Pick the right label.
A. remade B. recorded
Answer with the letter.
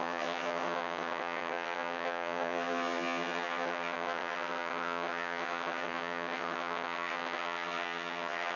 A